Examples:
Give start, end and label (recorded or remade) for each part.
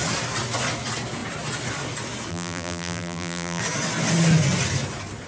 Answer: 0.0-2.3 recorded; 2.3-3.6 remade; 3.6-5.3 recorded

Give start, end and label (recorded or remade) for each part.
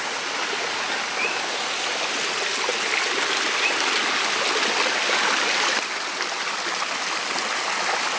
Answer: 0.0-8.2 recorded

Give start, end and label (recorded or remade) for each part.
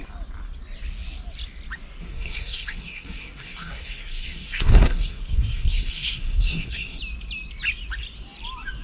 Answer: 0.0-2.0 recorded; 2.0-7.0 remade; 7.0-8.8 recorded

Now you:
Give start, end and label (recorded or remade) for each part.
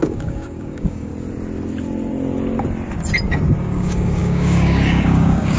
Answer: 0.0-1.1 remade; 1.1-3.6 recorded; 3.6-5.6 remade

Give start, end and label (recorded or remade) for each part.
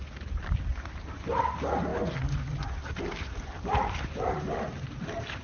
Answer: 0.0-5.4 recorded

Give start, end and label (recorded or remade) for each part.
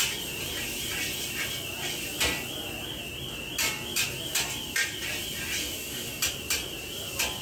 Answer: 0.0-5.6 recorded; 5.6-6.2 remade; 6.2-7.4 recorded